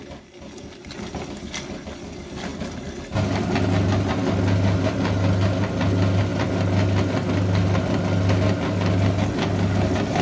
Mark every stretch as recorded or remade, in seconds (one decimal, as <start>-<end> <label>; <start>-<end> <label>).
0.0-10.2 recorded